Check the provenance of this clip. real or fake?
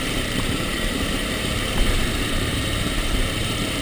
fake